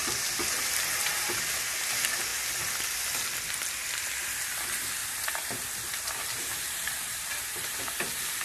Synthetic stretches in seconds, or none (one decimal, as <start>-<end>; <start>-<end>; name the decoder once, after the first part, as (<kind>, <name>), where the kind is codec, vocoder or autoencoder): 5.0-8.4 (vocoder, BigVGAN v2)